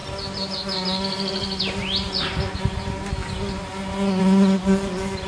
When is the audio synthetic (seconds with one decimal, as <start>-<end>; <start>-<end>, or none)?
none